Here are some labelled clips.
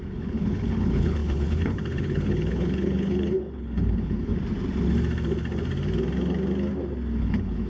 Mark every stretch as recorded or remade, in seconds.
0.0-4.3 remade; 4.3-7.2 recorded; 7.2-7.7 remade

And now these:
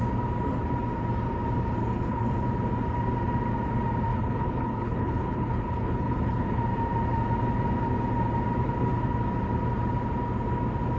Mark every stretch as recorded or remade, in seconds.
0.0-1.8 recorded; 1.8-2.3 remade; 2.3-4.1 recorded; 4.1-6.6 remade; 6.6-11.0 recorded

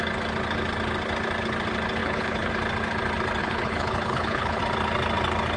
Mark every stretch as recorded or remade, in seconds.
0.0-2.0 recorded; 2.0-2.5 remade; 2.5-3.4 recorded; 3.4-4.6 remade; 4.6-5.6 recorded

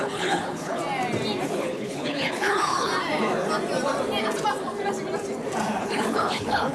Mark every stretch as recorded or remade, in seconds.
0.0-0.8 remade; 0.8-1.5 recorded; 1.5-2.9 remade; 2.9-5.8 recorded; 5.8-6.7 remade